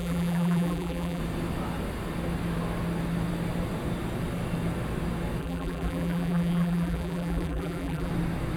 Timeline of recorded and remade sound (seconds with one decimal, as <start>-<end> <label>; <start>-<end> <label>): 0.0-1.2 remade; 1.2-5.4 recorded; 5.4-8.1 remade; 8.1-8.6 recorded

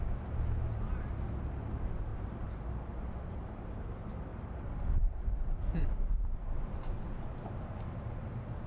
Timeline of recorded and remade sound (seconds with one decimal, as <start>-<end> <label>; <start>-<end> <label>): 0.0-2.1 recorded; 2.1-3.6 remade; 3.6-4.3 recorded; 4.3-8.2 remade; 8.2-8.7 recorded